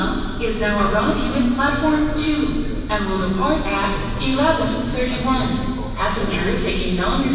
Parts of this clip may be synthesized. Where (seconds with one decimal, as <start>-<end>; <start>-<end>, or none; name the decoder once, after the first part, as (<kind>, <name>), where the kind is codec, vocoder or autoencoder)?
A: none